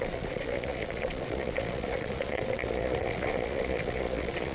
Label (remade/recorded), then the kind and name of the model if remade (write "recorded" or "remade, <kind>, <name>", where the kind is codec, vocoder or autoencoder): remade, vocoder, Vocos